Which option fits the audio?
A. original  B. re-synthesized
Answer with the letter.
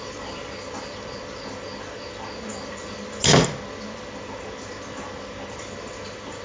A